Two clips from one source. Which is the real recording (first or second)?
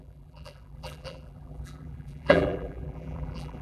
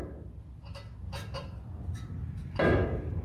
second